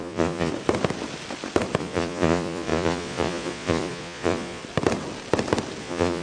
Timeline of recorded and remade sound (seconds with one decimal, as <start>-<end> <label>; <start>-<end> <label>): 0.0-0.5 remade; 0.5-1.8 recorded; 1.8-4.6 remade; 4.6-5.8 recorded; 5.8-6.2 remade